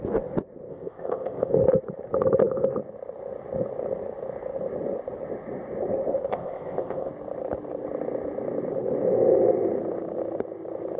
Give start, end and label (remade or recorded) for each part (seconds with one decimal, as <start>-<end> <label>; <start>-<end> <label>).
0.0-0.7 recorded; 0.7-1.5 remade; 1.5-6.3 recorded; 6.3-7.1 remade; 7.1-11.0 recorded